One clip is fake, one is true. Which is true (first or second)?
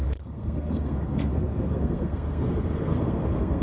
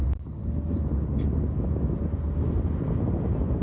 second